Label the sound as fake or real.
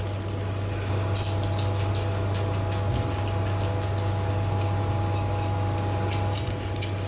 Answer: real